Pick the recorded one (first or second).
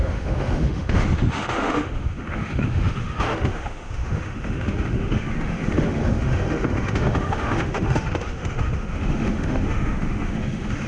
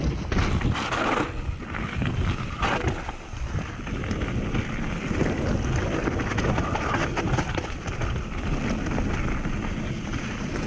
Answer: second